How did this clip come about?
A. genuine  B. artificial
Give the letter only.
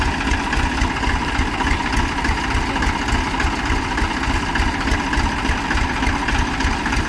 A